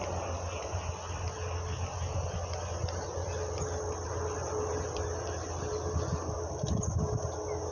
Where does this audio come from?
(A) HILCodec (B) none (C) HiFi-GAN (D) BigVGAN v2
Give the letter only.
B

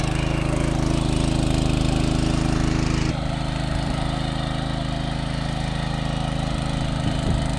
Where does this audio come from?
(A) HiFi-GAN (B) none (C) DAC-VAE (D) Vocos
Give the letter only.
B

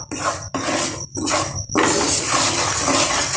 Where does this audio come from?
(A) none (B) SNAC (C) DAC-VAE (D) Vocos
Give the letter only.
A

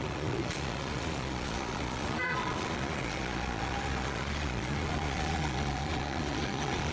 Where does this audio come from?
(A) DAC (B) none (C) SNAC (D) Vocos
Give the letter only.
D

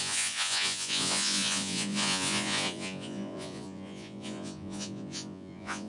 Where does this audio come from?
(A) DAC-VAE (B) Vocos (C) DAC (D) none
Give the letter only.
B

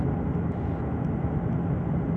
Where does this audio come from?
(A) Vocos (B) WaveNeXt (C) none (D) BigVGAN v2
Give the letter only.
C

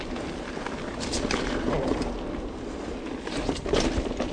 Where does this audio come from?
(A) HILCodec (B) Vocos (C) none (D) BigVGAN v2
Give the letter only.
C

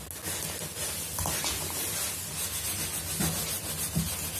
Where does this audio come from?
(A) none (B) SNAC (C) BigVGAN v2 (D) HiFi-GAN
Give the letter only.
A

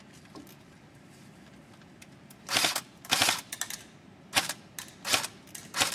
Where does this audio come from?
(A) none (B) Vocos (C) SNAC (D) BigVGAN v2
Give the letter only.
A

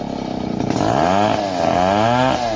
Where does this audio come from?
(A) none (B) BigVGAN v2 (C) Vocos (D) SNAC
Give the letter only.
A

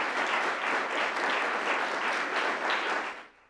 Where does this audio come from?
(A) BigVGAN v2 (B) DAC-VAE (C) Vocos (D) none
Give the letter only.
D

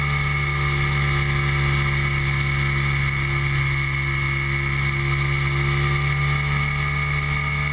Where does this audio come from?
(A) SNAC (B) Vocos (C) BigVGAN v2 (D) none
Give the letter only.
D